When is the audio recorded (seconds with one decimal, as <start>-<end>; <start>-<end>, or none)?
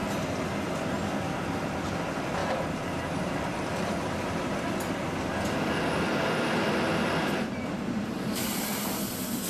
0.0-2.4; 4.6-7.2; 9.1-9.5